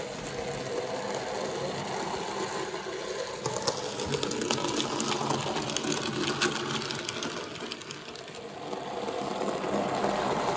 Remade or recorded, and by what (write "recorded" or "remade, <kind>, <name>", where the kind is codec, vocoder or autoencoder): recorded